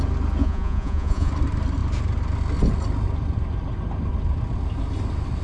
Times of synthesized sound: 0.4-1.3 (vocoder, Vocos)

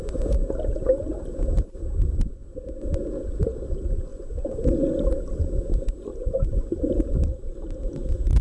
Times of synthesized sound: 6.1-6.8 (vocoder, Vocos)

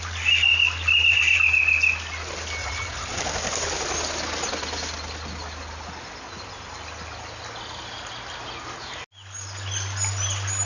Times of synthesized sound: 2.6-3.2 (vocoder, Vocos)